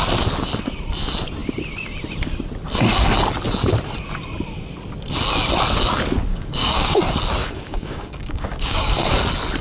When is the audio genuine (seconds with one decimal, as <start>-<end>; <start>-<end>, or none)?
0.0-6.3; 7.0-7.4; 9.1-9.6